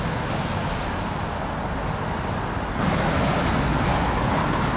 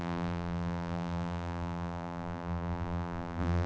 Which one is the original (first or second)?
first